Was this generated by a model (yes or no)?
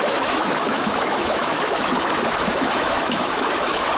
yes